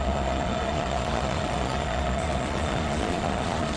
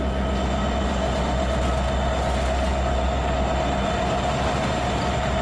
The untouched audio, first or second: second